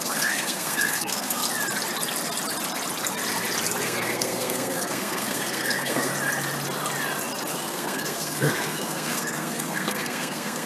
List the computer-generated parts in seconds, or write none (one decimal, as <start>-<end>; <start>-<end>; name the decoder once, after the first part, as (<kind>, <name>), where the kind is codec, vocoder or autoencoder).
0.0-1.4 (codec, SNAC); 3.8-6.1; 7.5-10.7